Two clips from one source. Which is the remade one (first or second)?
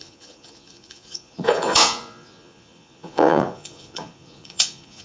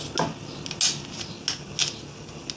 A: first